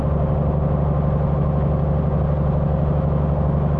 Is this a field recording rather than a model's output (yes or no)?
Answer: yes